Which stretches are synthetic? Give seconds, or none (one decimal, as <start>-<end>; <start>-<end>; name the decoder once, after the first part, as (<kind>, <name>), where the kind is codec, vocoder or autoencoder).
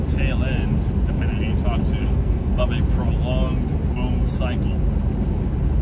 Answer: 2.0-2.6 (codec, SNAC)